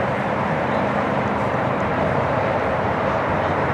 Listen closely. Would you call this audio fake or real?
fake